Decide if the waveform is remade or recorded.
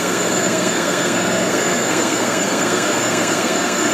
remade